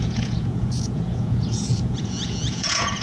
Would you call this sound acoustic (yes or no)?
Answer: no